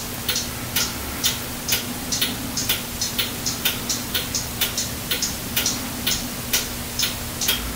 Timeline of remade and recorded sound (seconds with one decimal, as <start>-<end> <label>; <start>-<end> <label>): 0.0-2.6 recorded; 2.6-7.3 remade; 7.3-7.8 recorded